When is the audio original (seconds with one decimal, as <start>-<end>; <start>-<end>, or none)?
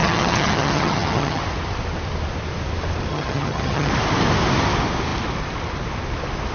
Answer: 1.4-3.1; 3.9-6.5